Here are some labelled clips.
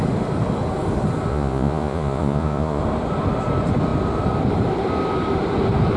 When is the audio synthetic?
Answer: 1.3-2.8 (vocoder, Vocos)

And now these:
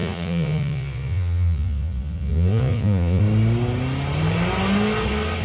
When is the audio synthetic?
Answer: 0.0-3.2 (vocoder, Vocos)

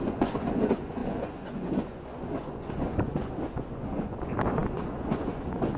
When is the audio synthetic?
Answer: 0.0-5.8 (vocoder, Vocos)

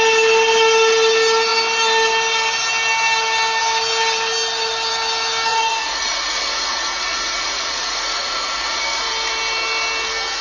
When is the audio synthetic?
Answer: 5.5-9.1 (vocoder, Vocos)

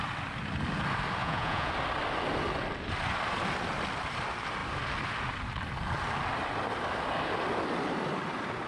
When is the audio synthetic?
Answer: 1.2-1.7 (vocoder, Vocos)

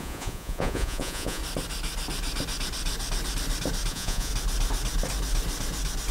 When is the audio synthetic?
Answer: 0.0-1.4 (vocoder, Vocos); 3.9-4.3

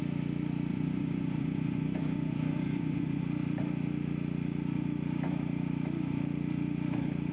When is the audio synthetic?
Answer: 0.7-3.2 (vocoder, Vocos)

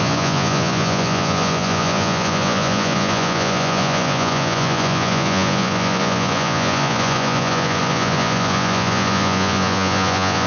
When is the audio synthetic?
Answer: 0.0-10.5 (vocoder, Vocos)